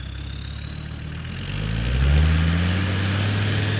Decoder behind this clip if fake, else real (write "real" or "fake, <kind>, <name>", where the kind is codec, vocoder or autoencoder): real